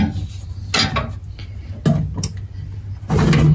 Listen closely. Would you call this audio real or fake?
real